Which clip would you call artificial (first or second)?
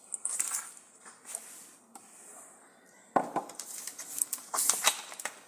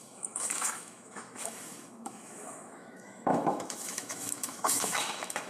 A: second